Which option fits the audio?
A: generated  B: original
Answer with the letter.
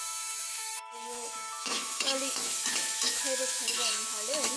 A